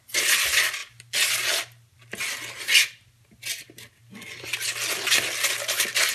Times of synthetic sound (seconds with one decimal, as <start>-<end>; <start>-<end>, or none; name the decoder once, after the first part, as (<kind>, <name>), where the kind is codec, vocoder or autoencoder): none